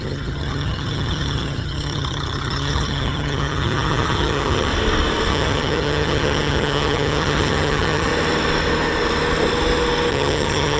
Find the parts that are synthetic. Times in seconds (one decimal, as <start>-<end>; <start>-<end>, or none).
0.0-4.7; 5.3-8.1; 10.1-10.8